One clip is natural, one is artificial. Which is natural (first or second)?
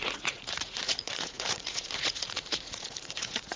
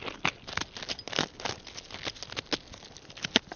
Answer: second